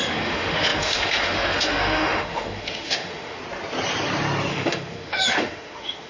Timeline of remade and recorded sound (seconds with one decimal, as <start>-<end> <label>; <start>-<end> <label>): 0.0-3.4 remade; 3.4-4.5 recorded; 4.5-6.1 remade